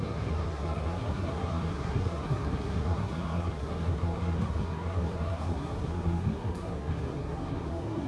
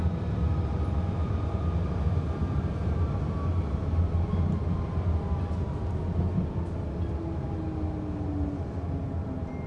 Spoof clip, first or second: first